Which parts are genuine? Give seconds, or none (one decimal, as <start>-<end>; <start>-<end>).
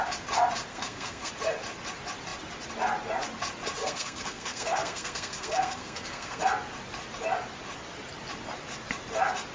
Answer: 0.0-0.7; 1.3-3.8; 6.4-9.5